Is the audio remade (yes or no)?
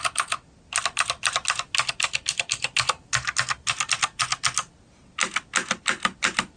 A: no